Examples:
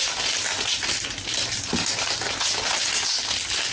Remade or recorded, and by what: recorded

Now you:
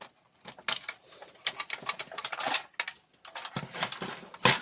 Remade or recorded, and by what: recorded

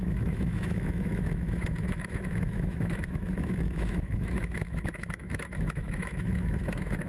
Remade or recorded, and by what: remade, autoencoder, DAC-VAE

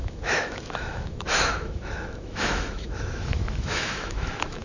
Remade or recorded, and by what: remade, autoencoder, DAC-VAE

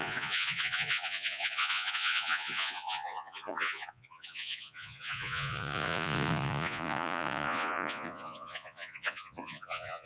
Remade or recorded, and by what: remade, vocoder, Vocos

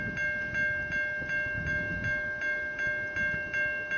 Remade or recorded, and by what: recorded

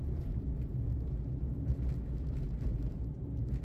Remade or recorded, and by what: recorded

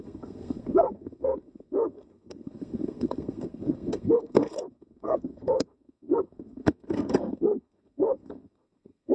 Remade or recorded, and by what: remade, codec, SNAC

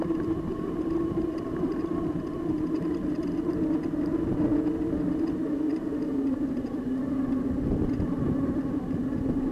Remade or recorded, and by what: recorded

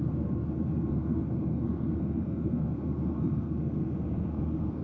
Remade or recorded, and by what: remade, codec, SNAC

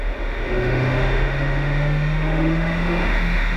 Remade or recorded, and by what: remade, autoencoder, DAC-VAE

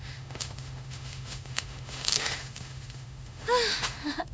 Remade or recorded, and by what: remade, autoencoder, DAC-VAE